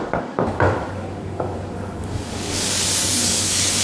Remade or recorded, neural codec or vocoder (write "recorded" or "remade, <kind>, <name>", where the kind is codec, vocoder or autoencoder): remade, codec, DAC